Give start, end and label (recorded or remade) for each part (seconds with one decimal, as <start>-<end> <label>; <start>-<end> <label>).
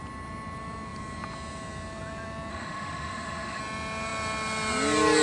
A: 0.0-2.5 recorded; 2.5-3.6 remade; 3.6-5.2 recorded